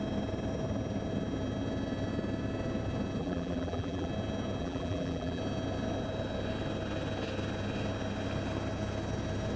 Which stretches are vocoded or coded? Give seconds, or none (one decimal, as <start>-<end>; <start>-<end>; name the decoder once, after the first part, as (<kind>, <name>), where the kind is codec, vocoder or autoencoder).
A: 3.2-4.1 (vocoder, BigVGAN v2); 4.6-5.4